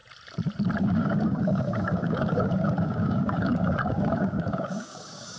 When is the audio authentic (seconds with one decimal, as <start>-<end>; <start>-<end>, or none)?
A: 0.0-0.8